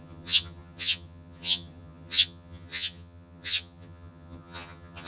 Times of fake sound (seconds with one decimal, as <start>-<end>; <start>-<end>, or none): 0.0-5.1